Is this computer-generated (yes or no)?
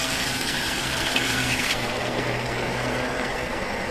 yes